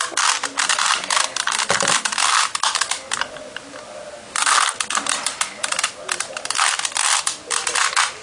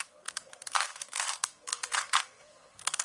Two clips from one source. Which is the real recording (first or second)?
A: first